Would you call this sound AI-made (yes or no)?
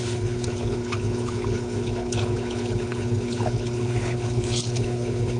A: yes